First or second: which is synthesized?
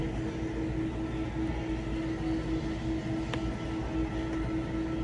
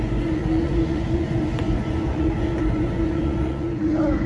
second